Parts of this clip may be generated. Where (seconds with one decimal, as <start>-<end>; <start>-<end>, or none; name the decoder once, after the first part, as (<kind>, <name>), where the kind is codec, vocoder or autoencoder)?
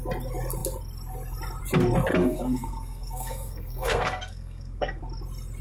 2.1-5.0 (codec, SNAC)